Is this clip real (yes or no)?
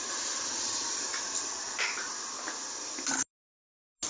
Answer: yes